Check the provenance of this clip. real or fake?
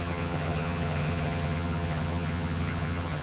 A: fake